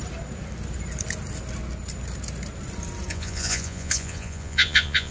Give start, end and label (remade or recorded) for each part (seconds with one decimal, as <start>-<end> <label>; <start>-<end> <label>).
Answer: 0.0-3.1 recorded; 3.1-5.1 remade